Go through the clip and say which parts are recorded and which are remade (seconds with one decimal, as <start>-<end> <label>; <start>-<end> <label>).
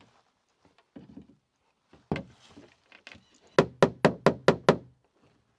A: 0.0-5.6 recorded